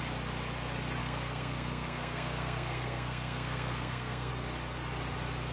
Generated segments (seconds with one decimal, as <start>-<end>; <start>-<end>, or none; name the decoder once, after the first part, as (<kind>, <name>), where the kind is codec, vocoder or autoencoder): 1.0-4.3 (codec, SNAC)